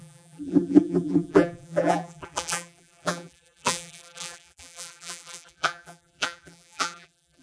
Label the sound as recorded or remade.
remade